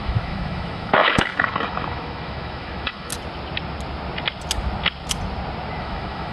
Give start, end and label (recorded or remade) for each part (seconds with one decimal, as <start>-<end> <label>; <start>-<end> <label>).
0.0-3.1 remade; 3.1-5.8 recorded; 5.8-6.3 remade